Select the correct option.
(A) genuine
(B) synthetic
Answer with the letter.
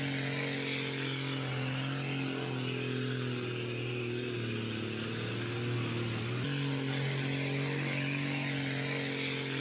A